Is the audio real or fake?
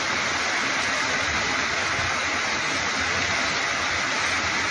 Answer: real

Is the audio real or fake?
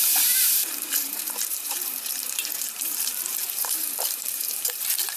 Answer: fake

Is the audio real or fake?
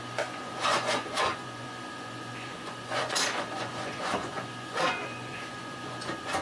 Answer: fake